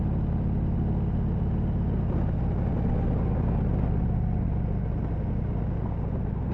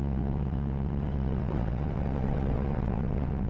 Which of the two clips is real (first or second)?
first